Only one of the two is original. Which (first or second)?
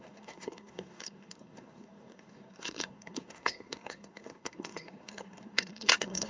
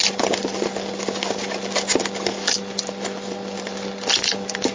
second